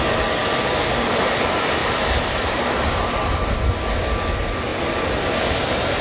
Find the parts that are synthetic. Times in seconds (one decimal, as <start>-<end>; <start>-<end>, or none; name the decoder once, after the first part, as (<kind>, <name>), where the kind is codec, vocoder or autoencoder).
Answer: 1.8-3.6 (vocoder, BigVGAN v2); 4.7-6.0